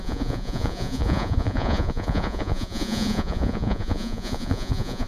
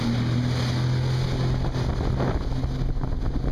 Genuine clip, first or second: second